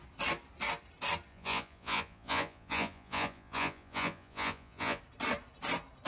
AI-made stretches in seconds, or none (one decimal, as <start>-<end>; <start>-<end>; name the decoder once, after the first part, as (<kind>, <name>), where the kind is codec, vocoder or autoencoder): 1.3-5.0 (vocoder, Vocos)